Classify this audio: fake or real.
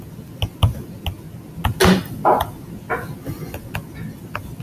real